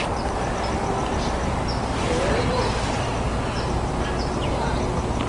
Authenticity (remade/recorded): recorded